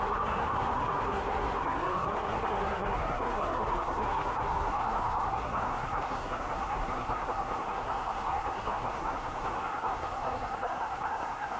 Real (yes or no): no